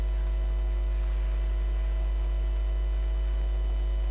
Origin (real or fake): real